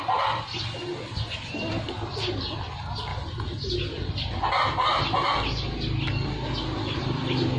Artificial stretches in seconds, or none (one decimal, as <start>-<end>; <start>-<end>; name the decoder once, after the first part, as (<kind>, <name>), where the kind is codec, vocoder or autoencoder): none

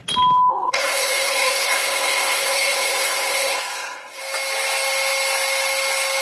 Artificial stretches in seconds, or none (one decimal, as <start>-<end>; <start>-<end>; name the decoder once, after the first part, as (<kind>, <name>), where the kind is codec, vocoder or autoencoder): 0.5-4.2 (codec, SNAC)

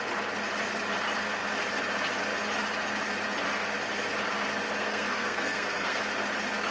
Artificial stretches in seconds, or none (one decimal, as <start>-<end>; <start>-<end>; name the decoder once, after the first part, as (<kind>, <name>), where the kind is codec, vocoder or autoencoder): 4.8-6.0 (codec, SNAC)

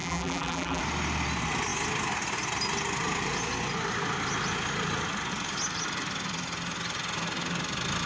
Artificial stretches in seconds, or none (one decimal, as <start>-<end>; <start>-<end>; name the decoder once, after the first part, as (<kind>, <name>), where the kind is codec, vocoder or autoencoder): 0.0-0.8 (vocoder, BigVGAN v2)